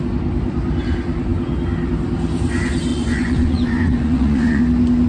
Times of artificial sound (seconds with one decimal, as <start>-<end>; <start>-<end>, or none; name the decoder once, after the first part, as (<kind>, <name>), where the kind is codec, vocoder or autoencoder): 2.9-4.6 (vocoder, Vocos)